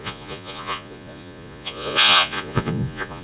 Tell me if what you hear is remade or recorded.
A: remade